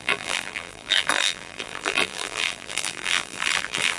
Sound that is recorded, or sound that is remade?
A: remade